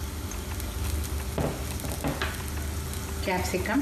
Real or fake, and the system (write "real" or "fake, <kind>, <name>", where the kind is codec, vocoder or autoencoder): real